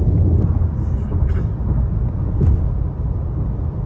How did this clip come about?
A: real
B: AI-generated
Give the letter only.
A